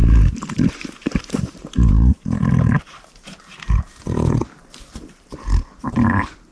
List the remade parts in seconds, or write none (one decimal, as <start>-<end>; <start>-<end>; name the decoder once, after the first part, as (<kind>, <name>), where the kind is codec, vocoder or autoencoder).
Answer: 0.0-3.9 (vocoder, BigVGAN v2)

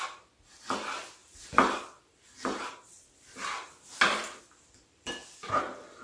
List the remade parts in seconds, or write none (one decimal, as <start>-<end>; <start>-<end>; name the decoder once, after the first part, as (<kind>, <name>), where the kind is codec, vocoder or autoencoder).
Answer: 1.2-4.4 (vocoder, BigVGAN v2)

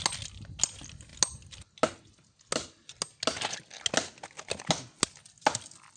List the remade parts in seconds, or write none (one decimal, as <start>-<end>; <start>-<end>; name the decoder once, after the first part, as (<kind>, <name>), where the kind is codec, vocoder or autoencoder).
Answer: none

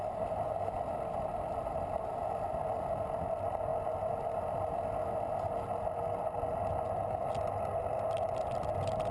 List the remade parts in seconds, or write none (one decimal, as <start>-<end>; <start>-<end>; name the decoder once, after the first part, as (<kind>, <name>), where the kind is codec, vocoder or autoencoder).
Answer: none

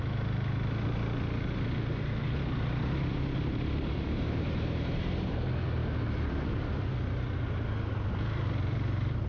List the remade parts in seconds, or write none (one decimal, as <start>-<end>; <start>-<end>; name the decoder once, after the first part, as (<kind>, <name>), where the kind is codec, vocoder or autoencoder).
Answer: 3.1-5.3 (vocoder, BigVGAN v2)

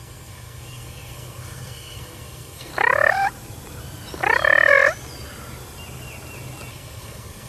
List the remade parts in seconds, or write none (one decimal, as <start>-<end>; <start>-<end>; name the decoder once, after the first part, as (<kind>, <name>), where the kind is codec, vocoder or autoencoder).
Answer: 0.0-2.7 (codec, SNAC); 6.7-7.5